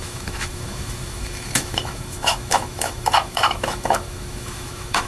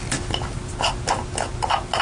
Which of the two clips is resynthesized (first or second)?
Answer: first